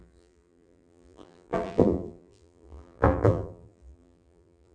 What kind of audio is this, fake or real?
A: fake